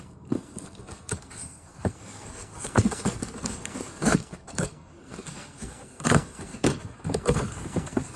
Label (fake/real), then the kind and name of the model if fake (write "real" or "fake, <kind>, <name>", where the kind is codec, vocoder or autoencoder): fake, codec, SNAC